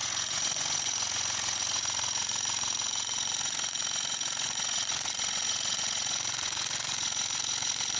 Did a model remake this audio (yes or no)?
yes